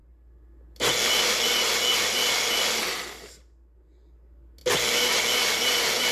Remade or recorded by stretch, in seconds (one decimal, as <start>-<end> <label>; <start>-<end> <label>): 0.0-6.1 recorded